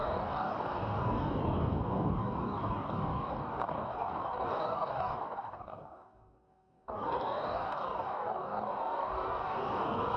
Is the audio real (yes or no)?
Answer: no